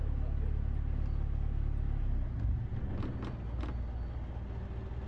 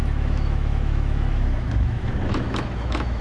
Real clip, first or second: first